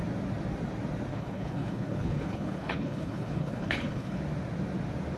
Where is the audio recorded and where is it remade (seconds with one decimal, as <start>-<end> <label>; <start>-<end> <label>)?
0.0-1.1 recorded; 1.1-4.2 remade; 4.2-5.2 recorded